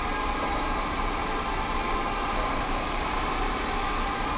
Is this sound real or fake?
real